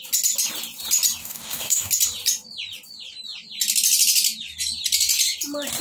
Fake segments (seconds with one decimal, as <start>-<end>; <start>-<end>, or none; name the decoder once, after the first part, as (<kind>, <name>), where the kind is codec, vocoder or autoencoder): 1.2-1.9 (codec, DAC)